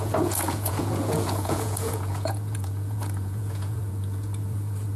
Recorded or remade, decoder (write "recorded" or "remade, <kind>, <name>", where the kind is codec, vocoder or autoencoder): remade, vocoder, Vocos